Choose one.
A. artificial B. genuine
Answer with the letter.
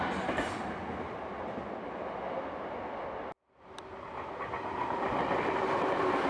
B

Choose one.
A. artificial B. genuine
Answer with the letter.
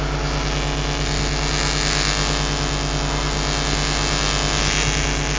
B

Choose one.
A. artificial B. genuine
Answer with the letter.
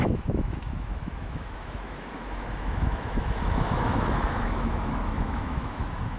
A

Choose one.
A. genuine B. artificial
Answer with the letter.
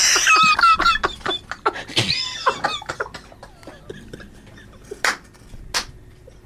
A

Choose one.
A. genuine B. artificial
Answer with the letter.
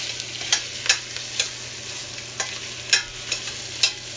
A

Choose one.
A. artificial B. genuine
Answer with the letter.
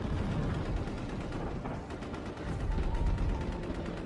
B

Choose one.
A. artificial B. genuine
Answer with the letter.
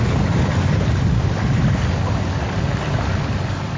B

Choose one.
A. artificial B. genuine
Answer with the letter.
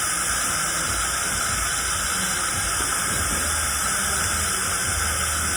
B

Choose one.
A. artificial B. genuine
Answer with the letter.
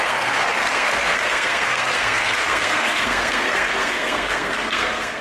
A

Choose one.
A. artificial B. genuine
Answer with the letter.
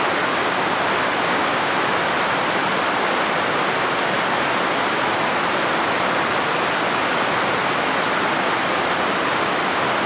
B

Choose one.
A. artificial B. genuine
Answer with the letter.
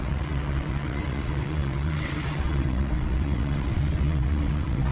A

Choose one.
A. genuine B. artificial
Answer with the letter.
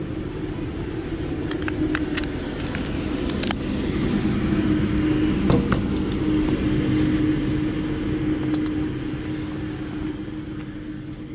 A